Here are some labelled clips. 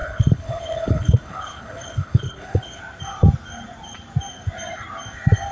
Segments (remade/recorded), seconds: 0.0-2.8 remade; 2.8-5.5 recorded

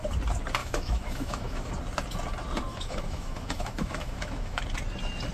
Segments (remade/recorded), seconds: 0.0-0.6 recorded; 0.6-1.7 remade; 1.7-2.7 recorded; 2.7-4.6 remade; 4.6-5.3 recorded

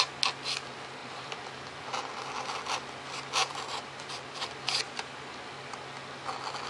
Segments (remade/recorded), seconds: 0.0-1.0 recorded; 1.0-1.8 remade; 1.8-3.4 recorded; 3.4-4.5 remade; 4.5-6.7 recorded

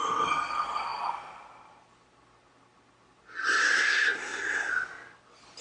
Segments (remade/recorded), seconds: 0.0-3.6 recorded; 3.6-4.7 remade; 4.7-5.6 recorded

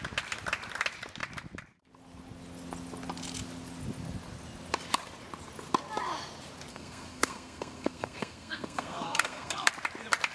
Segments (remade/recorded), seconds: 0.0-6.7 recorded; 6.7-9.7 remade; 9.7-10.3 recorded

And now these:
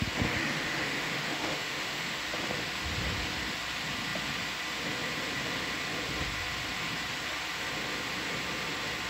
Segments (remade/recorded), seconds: 0.0-0.4 recorded; 0.4-2.2 remade; 2.2-9.1 recorded

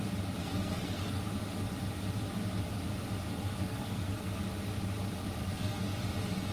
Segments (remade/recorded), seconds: 0.0-0.4 recorded; 0.4-1.2 remade; 1.2-3.3 recorded; 3.3-4.4 remade; 4.4-5.4 recorded; 5.4-5.9 remade; 5.9-6.5 recorded